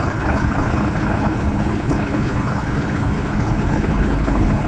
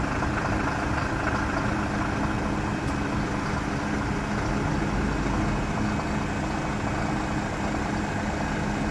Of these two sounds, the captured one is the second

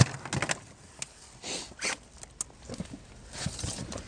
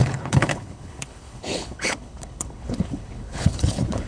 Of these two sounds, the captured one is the first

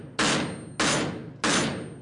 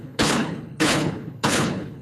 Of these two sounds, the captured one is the first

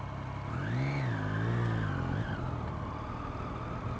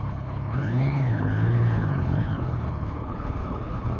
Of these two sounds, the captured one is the first